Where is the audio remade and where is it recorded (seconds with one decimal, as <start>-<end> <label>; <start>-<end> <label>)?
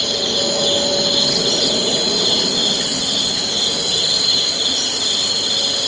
0.0-5.9 recorded